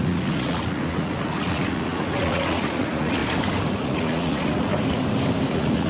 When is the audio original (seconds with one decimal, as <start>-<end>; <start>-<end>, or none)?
3.2-3.7; 4.7-5.5